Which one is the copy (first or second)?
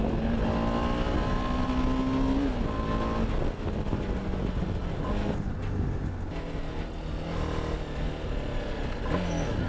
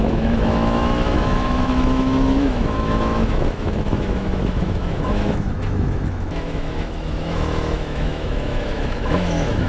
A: second